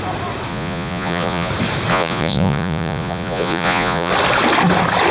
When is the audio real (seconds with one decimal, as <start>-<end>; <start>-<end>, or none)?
0.0-0.5; 1.5-1.9; 4.1-5.1